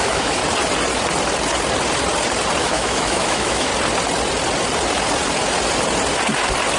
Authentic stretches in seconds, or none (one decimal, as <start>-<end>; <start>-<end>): 0.4-2.6; 3.7-6.8